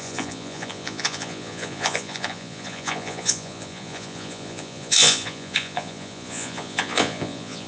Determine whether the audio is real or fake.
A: fake